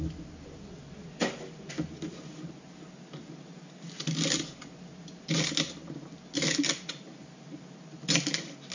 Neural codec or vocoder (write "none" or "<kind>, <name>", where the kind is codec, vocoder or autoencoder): none